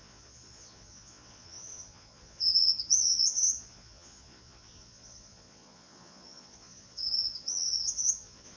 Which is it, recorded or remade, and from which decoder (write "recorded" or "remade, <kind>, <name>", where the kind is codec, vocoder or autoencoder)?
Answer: remade, vocoder, Vocos